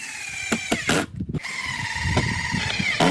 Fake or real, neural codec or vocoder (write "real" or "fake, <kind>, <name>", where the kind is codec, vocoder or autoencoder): real